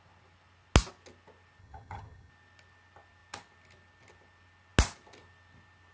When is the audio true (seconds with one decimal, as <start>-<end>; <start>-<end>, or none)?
0.0-1.6; 2.3-5.9